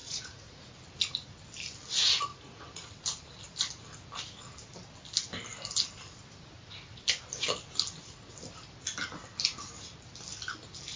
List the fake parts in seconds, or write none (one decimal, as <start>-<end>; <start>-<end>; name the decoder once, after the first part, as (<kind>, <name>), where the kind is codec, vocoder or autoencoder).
0.0-0.7 (vocoder, Vocos); 2.3-2.9